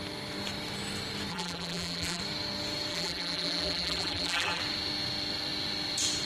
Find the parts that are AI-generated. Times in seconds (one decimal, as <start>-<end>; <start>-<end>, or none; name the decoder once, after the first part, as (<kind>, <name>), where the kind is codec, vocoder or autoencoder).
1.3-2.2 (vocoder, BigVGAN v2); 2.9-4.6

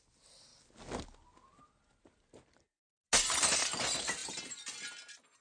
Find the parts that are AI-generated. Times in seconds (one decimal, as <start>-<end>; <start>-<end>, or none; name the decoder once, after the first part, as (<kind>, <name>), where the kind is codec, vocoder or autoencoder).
none

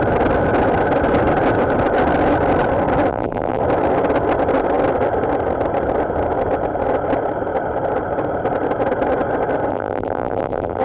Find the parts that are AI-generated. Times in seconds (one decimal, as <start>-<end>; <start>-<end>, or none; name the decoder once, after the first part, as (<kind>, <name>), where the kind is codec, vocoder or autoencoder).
3.1-3.6 (vocoder, BigVGAN v2); 9.7-10.8

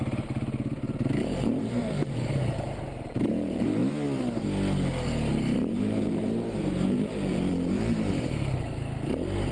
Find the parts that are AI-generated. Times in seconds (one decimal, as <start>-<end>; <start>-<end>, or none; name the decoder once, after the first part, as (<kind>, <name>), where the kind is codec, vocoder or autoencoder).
0.0-3.8 (vocoder, BigVGAN v2); 5.3-9.5